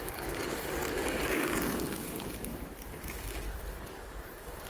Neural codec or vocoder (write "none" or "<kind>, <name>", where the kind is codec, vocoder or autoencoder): codec, DAC